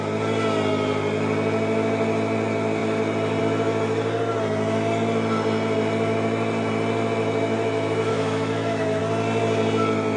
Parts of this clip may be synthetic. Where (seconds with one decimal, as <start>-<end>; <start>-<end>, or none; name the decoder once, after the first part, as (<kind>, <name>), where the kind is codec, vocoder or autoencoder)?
8.1-9.0 (autoencoder, DAC-VAE)